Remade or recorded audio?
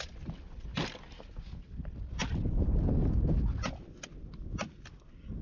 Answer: recorded